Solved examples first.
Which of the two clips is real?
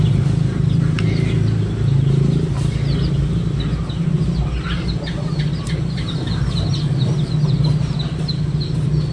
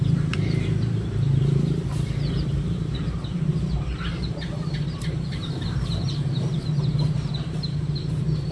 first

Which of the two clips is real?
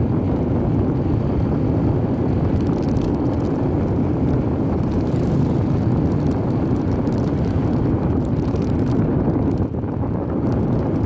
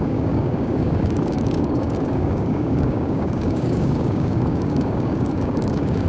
first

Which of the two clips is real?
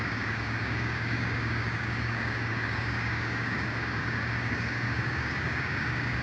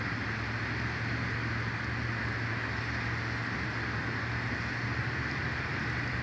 second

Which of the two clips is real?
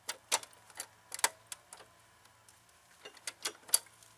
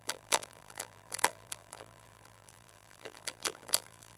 first